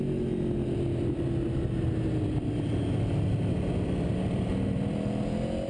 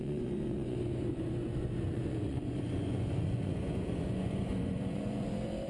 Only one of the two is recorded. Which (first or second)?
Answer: first